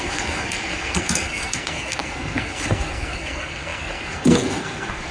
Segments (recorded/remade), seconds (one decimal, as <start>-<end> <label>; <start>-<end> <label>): 0.0-5.1 remade